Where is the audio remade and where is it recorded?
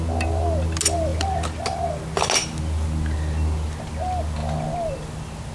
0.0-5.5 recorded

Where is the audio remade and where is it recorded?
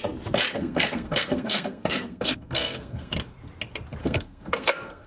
0.0-0.5 recorded; 0.5-3.1 remade; 3.1-4.0 recorded; 4.0-5.1 remade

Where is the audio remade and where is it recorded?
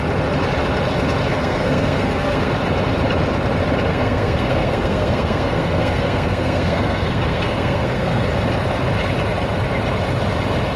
0.0-1.3 recorded; 1.3-2.5 remade; 2.5-3.9 recorded; 3.9-8.3 remade; 8.3-10.8 recorded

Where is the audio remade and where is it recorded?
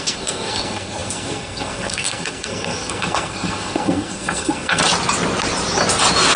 0.0-4.8 remade; 4.8-6.4 recorded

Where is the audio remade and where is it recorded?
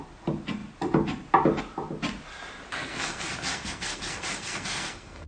0.0-2.7 recorded; 2.7-5.3 remade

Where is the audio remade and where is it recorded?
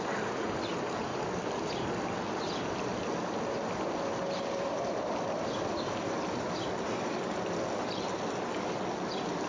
0.0-9.5 recorded